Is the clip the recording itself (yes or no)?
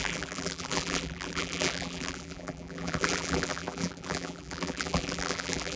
no